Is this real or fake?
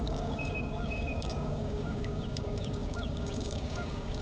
fake